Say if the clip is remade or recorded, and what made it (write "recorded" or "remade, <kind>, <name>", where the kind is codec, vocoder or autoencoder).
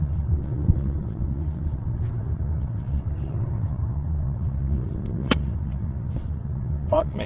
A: remade, vocoder, WaveNeXt